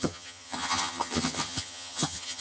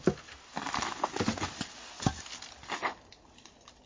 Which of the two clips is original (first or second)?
second